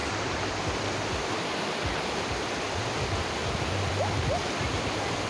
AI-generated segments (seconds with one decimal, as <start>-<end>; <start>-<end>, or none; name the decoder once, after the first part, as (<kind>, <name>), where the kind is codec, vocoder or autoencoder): 0.0-3.4 (vocoder, BigVGAN v2); 4.7-5.3